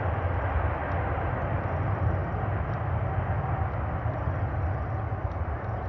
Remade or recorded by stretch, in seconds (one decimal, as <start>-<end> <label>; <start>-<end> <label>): 0.0-5.9 recorded